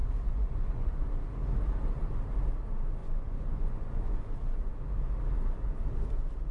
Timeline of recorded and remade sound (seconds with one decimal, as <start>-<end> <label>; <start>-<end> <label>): 0.0-1.0 remade; 1.0-3.0 recorded; 3.0-4.3 remade; 4.3-6.5 recorded